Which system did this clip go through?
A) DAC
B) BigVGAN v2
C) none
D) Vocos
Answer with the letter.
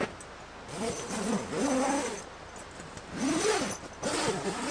C